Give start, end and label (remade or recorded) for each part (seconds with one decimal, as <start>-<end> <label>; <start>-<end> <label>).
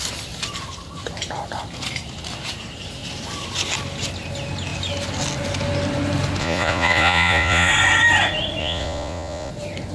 0.0-6.4 recorded; 6.4-7.7 remade; 7.7-8.6 recorded; 8.6-9.5 remade; 9.5-9.9 recorded